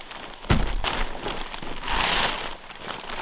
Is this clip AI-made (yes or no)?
no